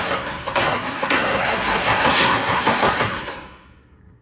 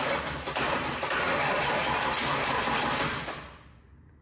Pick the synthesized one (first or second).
first